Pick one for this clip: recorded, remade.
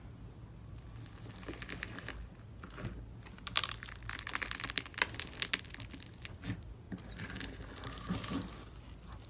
recorded